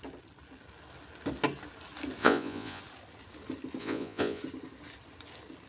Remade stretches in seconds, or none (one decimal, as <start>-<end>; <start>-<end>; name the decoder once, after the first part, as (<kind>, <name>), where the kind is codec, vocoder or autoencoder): 2.2-2.8 (vocoder, Vocos); 3.8-4.4